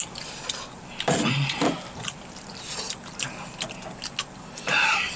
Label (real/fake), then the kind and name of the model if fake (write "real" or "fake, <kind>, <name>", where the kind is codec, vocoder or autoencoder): real